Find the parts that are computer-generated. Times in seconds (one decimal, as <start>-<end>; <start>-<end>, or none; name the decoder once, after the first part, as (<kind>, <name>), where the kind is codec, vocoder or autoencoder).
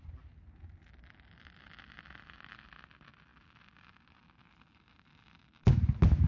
none